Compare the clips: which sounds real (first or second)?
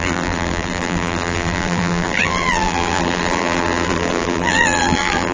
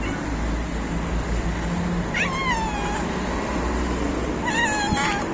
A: second